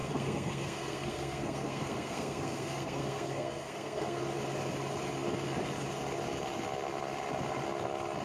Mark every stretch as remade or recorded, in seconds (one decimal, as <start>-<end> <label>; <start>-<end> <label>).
0.0-4.2 remade; 4.2-8.2 recorded